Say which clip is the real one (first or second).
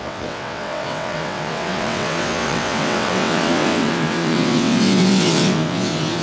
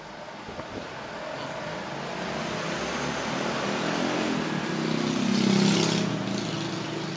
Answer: second